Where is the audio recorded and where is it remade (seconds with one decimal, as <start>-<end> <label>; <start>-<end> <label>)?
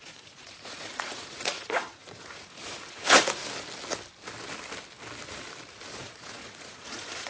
0.0-3.4 remade; 3.4-6.0 recorded; 6.0-7.3 remade